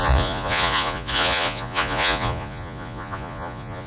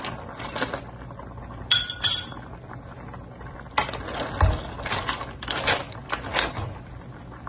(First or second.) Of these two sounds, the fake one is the first